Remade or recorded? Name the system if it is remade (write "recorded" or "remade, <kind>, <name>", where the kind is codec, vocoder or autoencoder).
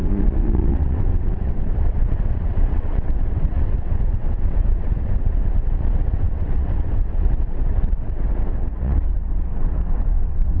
remade, vocoder, WaveNeXt